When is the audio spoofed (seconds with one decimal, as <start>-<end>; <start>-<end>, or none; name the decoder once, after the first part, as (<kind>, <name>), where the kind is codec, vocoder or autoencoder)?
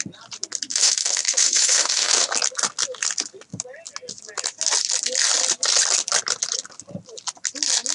0.7-2.3 (autoencoder, DAC-VAE)